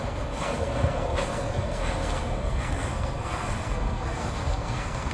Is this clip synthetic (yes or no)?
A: yes